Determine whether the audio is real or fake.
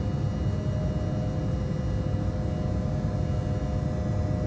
real